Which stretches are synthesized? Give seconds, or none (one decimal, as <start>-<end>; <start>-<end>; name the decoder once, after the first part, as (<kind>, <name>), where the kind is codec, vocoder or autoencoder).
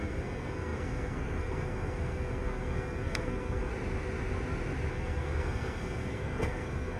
0.0-3.7 (codec, SNAC); 4.9-7.0